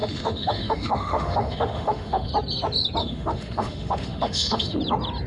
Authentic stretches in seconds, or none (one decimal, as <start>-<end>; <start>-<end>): 2.3-3.0; 4.8-5.3

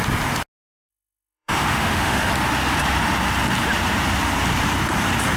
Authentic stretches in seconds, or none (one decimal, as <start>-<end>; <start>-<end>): 0.0-0.9; 2.3-5.4

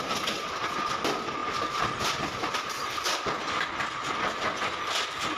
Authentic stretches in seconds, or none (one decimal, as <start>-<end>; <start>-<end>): 0.0-5.4

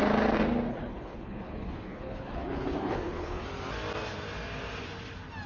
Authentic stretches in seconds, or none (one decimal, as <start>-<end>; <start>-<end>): 0.0-0.7; 3.4-5.5